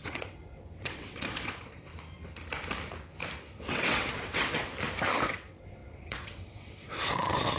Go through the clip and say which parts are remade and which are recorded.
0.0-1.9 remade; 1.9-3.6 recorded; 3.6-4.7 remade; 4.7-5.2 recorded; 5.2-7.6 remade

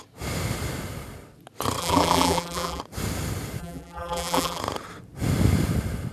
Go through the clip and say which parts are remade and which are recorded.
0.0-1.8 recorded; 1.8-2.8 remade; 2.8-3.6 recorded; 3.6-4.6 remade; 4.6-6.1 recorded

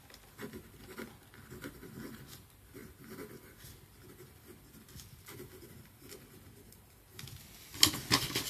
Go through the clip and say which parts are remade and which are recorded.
0.0-8.5 recorded

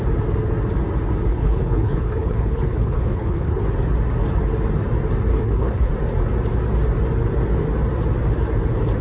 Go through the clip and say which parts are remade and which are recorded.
0.0-1.3 recorded; 1.3-3.6 remade; 3.6-5.3 recorded; 5.3-5.9 remade; 5.9-9.0 recorded

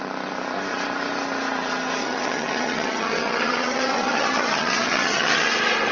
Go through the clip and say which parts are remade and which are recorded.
0.0-2.0 recorded; 2.0-5.5 remade; 5.5-5.9 recorded

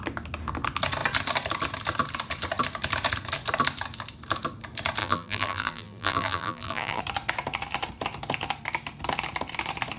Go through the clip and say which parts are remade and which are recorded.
0.0-5.0 recorded; 5.0-7.0 remade; 7.0-10.0 recorded